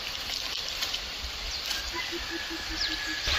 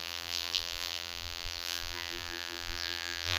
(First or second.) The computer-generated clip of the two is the second